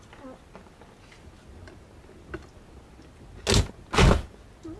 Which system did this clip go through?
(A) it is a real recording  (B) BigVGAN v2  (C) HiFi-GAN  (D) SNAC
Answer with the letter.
A